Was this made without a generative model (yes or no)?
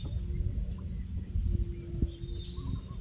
yes